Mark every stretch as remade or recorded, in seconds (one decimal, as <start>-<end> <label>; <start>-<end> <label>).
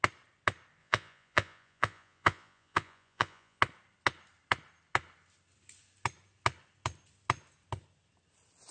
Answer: 0.0-0.8 recorded; 0.8-3.6 remade; 3.6-8.7 recorded